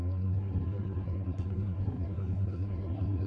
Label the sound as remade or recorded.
remade